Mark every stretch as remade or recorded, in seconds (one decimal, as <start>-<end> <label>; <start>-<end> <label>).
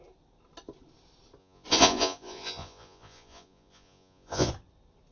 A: 0.0-1.4 recorded; 1.4-4.5 remade; 4.5-5.1 recorded